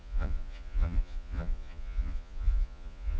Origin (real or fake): fake